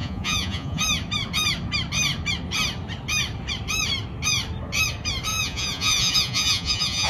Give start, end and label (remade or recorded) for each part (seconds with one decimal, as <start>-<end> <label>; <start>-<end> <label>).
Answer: 0.0-0.8 remade; 0.8-5.3 recorded; 5.3-7.1 remade